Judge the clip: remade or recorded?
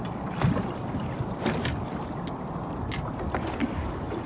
recorded